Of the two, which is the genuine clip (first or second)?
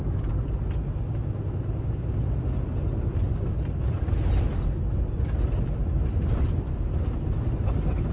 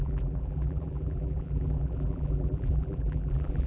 first